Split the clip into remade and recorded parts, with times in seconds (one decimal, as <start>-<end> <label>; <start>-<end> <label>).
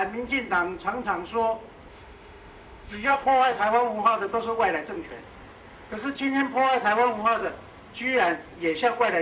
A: 0.0-1.9 recorded; 1.9-3.6 remade; 3.6-9.2 recorded